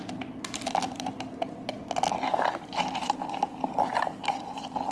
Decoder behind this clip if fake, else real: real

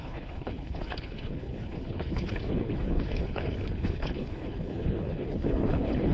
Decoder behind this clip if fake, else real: fake, codec, HILCodec